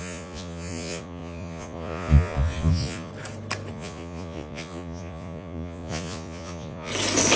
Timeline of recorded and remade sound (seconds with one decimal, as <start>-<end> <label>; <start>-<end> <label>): 0.0-3.1 remade; 3.1-3.7 recorded; 3.7-6.9 remade; 6.9-7.4 recorded